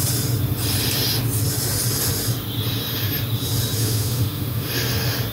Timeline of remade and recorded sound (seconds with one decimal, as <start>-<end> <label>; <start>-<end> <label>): 0.0-3.8 recorded; 3.8-4.7 remade; 4.7-5.3 recorded

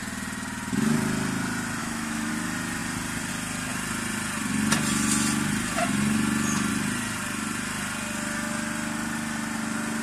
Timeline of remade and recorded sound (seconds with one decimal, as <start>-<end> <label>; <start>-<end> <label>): 0.0-1.8 recorded; 1.8-2.3 remade; 2.3-10.0 recorded

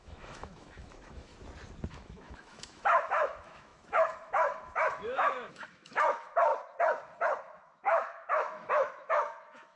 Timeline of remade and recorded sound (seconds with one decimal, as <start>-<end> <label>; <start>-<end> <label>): 0.0-1.3 remade; 1.3-1.9 recorded; 1.9-6.5 remade; 6.5-7.4 recorded; 7.4-9.8 remade

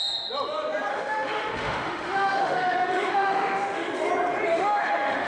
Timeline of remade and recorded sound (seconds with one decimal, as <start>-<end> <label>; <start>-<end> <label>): 0.0-0.9 recorded; 0.9-4.1 remade; 4.1-4.5 recorded; 4.5-5.3 remade